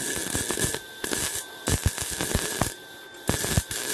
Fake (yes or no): no